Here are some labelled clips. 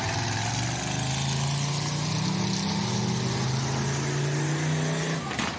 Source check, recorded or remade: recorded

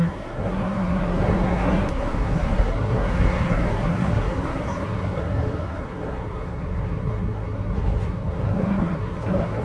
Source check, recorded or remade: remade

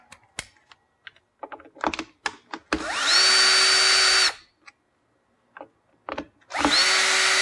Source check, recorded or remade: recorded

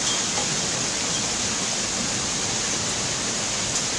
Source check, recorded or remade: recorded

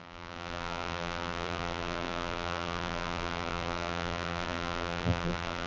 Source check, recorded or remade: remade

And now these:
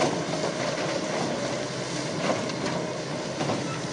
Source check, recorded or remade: recorded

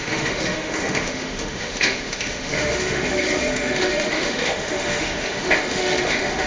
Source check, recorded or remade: remade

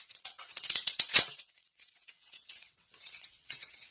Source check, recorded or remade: remade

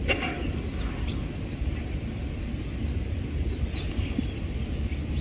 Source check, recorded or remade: recorded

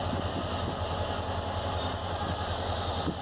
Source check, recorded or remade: recorded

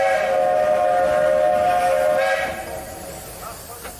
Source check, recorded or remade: recorded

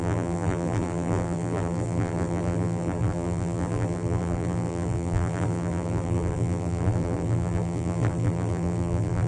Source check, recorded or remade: remade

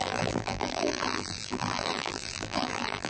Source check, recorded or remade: remade